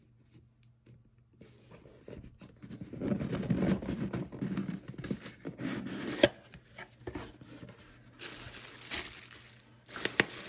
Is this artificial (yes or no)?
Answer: no